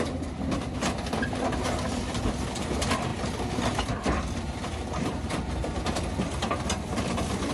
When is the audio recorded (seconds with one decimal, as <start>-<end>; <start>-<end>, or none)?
none